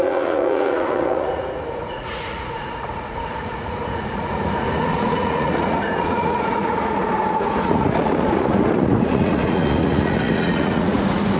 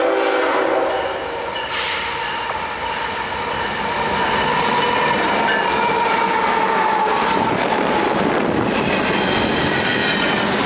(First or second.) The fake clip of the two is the first